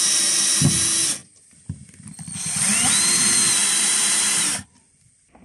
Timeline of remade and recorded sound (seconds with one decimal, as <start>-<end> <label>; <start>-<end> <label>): 0.0-5.4 recorded